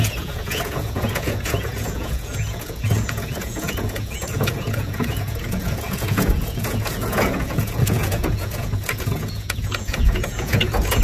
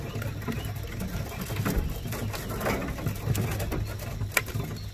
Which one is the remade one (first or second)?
first